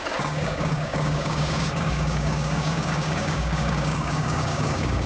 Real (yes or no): no